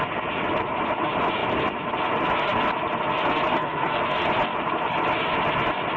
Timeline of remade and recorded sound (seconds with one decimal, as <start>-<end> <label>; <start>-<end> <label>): 0.0-3.5 recorded; 3.5-4.0 remade; 4.0-6.0 recorded